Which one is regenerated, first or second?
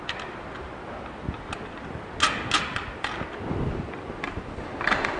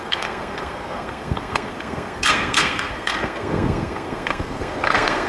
second